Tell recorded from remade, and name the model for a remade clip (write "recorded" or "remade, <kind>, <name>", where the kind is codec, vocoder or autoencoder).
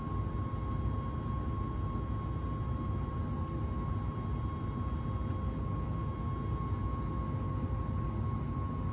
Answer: recorded